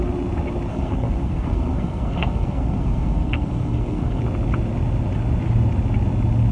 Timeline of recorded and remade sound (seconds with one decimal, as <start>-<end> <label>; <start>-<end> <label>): 0.0-0.7 recorded; 0.7-4.2 remade; 4.2-6.5 recorded